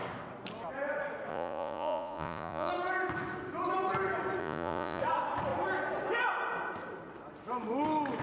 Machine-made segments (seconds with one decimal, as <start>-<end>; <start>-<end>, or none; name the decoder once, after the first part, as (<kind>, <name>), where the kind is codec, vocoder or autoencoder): 1.3-2.7 (vocoder, Vocos); 4.4-5.0

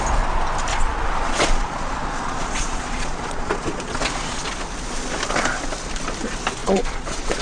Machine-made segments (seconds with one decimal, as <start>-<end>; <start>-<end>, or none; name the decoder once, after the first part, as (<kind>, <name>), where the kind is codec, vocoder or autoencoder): 0.7-4.5 (vocoder, Vocos); 6.6-7.4

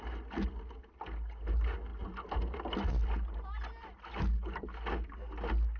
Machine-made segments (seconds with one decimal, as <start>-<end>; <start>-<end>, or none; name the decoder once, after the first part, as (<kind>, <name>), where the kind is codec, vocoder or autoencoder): none

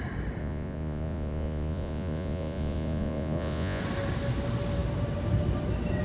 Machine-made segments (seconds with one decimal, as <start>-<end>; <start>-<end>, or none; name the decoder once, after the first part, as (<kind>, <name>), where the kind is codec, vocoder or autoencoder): 0.4-3.8 (vocoder, Vocos)